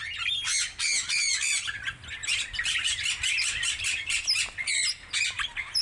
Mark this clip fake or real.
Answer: real